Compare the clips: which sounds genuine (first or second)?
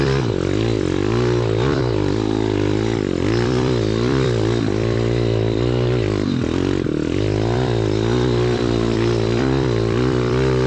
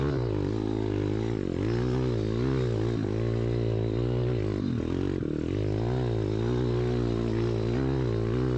second